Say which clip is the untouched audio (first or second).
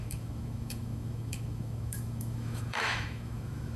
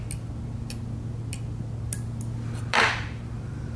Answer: second